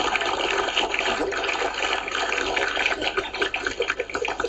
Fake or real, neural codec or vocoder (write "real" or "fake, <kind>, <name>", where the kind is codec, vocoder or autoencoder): fake, vocoder, BigVGAN v2